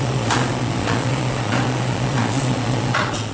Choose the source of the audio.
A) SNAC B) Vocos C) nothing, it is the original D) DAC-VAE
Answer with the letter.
B